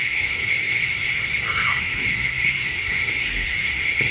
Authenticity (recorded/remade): remade